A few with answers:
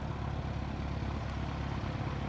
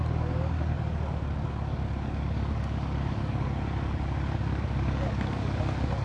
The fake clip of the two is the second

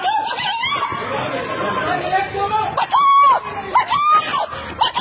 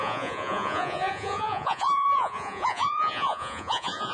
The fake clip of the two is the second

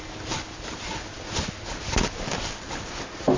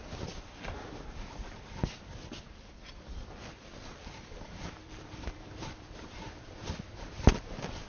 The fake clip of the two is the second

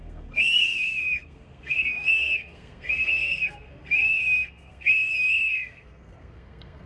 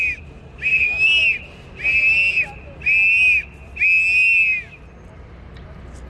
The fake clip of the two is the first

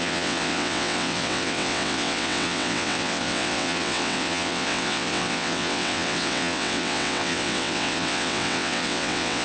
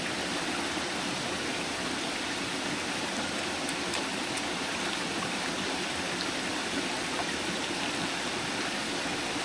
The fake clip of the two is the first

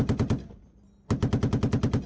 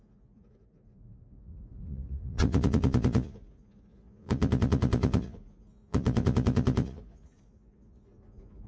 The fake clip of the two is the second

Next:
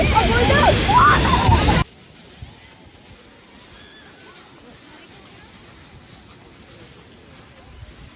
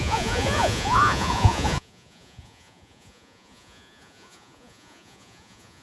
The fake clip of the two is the second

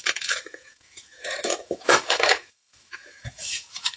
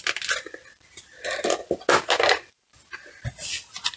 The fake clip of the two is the first